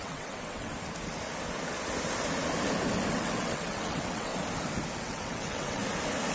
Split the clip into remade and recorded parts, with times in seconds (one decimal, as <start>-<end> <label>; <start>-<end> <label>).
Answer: 0.0-0.7 remade; 0.7-3.1 recorded; 3.1-4.3 remade; 4.3-5.0 recorded; 5.0-5.8 remade; 5.8-6.3 recorded